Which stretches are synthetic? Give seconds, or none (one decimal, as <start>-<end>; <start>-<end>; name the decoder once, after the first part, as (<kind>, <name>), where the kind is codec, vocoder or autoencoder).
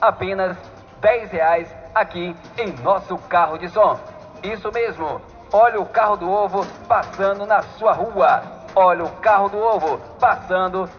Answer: 5.4-6.0 (autoencoder, DAC-VAE); 7.7-9.8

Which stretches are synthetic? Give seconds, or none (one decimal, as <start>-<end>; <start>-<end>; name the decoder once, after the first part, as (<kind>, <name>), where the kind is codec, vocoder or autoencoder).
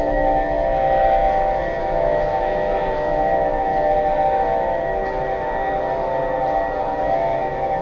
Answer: 0.0-1.2 (autoencoder, DAC-VAE); 1.8-3.7; 7.0-7.8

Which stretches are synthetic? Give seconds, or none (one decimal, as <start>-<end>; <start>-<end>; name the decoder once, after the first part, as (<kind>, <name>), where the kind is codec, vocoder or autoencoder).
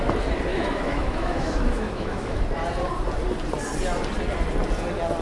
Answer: 0.5-2.4 (autoencoder, DAC-VAE)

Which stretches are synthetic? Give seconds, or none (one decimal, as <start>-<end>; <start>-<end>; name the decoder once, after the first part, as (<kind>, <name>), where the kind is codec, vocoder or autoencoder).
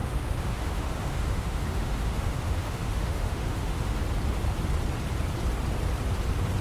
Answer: 0.0-4.0 (autoencoder, DAC-VAE)